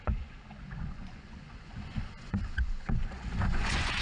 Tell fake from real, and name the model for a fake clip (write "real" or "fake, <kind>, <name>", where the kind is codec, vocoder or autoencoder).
fake, vocoder, Vocos